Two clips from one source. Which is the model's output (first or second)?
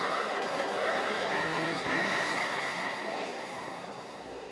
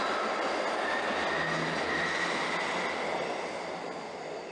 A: first